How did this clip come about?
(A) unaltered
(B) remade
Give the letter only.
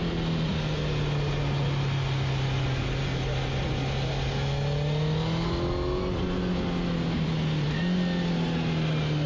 A